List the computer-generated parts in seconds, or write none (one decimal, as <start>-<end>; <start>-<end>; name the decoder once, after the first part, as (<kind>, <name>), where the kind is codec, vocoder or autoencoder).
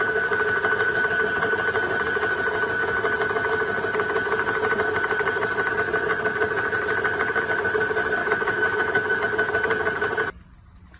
8.2-9.2 (autoencoder, DAC-VAE)